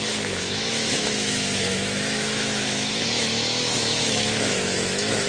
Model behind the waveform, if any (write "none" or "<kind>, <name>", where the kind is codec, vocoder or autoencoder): autoencoder, DAC-VAE